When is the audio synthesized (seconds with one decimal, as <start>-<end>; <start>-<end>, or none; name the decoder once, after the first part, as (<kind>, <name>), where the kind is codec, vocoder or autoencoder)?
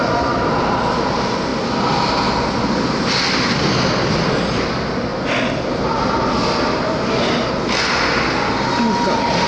none